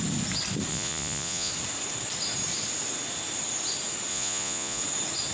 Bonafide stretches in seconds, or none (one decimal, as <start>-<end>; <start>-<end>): 0.0-0.7; 1.5-4.1; 4.8-5.3